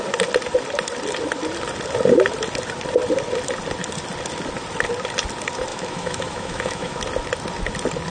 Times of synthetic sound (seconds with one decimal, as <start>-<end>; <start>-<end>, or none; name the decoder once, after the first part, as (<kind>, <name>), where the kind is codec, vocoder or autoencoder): 5.7-7.0 (autoencoder, DAC-VAE)